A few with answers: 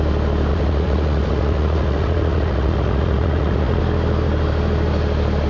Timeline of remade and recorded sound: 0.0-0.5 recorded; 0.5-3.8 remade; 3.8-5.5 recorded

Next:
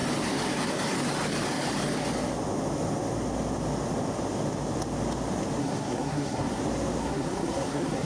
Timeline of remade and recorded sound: 0.0-5.6 recorded; 5.6-6.6 remade; 6.6-7.0 recorded; 7.0-8.1 remade

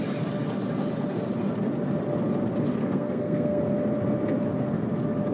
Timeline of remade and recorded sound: 0.0-2.8 recorded; 2.8-3.6 remade; 3.6-5.3 recorded

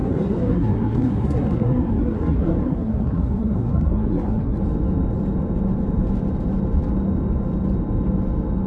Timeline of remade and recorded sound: 0.0-4.6 remade; 4.6-8.7 recorded